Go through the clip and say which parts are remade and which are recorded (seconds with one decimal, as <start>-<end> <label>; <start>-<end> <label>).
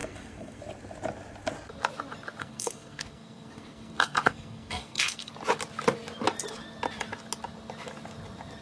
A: 0.0-0.6 remade; 0.6-2.4 recorded; 2.4-5.3 remade; 5.3-8.6 recorded